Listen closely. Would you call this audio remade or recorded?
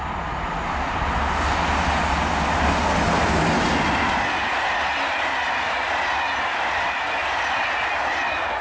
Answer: recorded